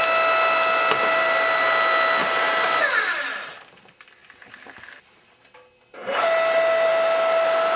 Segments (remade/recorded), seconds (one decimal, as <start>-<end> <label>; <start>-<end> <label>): 0.0-7.8 recorded